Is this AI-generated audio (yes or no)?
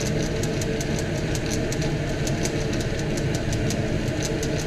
no